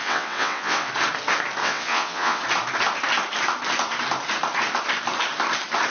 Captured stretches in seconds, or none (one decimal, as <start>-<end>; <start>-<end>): 0.9-1.6; 2.4-5.9